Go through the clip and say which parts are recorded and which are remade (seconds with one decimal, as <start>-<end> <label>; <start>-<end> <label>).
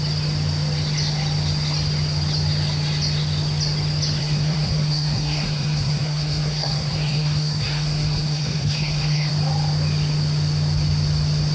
0.0-4.2 recorded; 4.2-9.3 remade; 9.3-11.5 recorded